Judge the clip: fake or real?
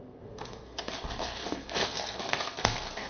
fake